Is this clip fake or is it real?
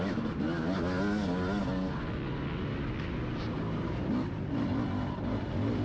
real